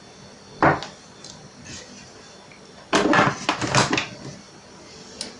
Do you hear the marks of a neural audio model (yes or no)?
no